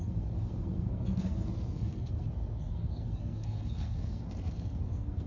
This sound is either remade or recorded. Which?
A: remade